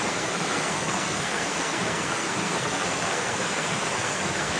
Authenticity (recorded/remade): remade